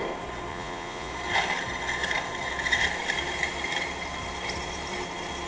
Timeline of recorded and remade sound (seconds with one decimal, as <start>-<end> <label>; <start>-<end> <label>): 0.0-0.5 recorded; 0.5-1.1 remade; 1.1-5.5 recorded